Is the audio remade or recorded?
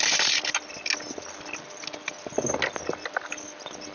recorded